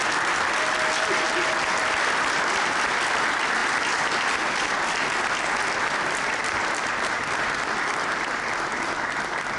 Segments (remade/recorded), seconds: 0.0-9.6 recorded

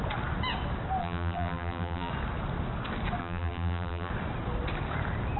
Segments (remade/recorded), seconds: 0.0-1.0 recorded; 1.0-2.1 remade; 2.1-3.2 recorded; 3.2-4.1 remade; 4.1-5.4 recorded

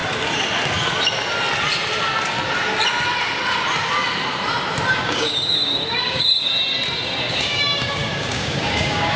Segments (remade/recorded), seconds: 0.0-4.9 recorded; 4.9-6.5 remade; 6.5-7.2 recorded; 7.2-9.2 remade